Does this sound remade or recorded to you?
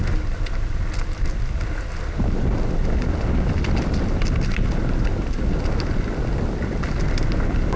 recorded